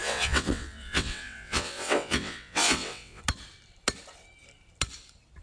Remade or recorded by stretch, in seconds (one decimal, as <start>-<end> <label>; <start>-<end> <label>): 0.0-3.2 remade; 3.2-5.4 recorded